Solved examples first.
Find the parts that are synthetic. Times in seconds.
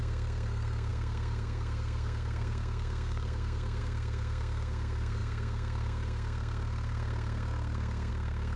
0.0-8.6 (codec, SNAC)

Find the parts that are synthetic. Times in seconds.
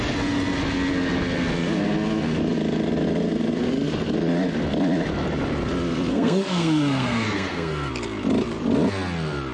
6.1-7.9 (codec, SNAC)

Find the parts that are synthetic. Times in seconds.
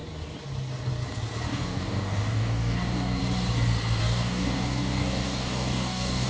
1.5-3.2 (codec, DAC); 4.0-6.3